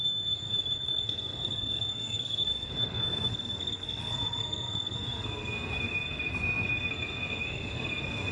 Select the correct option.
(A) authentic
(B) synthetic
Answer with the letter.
B